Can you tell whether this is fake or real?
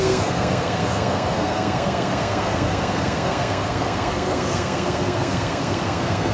fake